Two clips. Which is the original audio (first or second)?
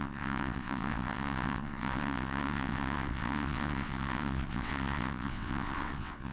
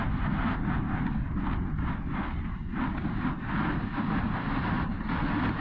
second